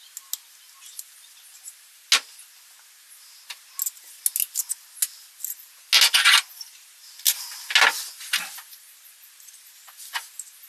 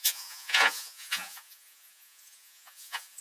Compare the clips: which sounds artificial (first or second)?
second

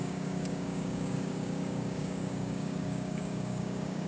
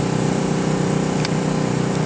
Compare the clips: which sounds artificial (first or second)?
first